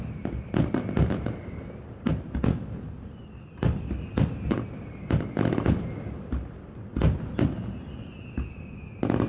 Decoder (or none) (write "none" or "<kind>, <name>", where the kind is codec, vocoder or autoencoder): none